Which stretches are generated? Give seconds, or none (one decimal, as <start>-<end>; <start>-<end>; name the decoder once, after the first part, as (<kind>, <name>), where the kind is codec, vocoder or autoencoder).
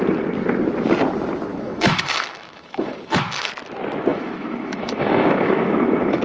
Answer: 1.5-3.5 (autoencoder, DAC-VAE); 4.1-6.2